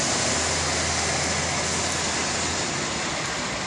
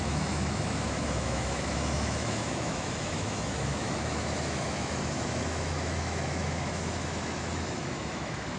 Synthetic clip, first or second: second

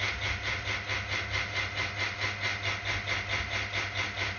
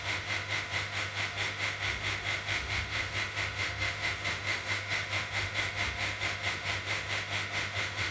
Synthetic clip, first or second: second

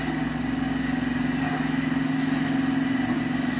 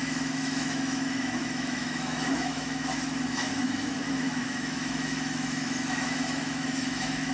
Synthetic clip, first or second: second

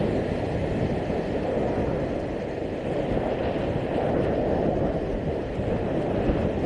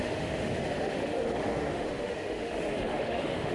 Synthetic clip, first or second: second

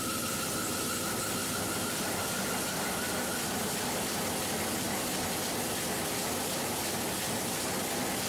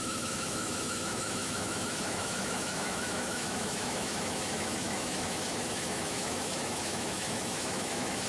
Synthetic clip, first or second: second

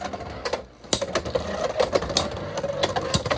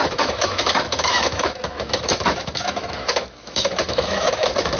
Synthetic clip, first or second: second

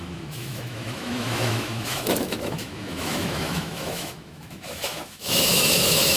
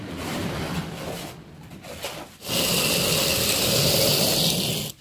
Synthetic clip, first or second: first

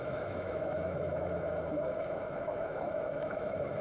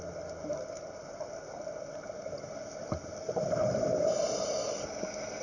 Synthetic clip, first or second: first